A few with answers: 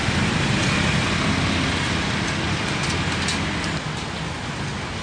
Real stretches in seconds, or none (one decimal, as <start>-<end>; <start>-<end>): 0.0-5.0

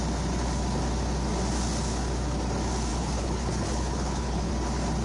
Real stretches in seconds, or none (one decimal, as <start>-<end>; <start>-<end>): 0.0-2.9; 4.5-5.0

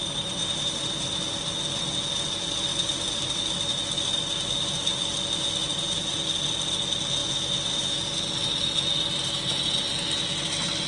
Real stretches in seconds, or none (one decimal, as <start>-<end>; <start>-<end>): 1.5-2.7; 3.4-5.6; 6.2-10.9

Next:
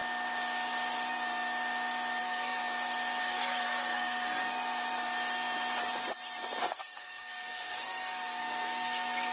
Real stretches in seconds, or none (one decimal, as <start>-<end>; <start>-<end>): 0.0-2.2; 2.6-3.2; 4.4-6.6

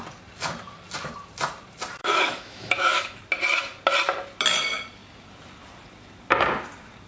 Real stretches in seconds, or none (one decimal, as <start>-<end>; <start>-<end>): 0.0-2.0; 3.2-7.1

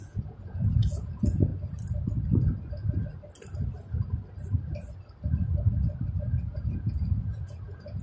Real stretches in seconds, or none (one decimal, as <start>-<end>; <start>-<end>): 1.5-2.7; 3.1-6.3

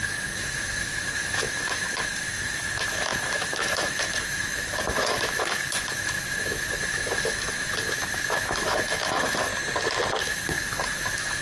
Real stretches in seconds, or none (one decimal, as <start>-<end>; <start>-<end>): 9.5-10.2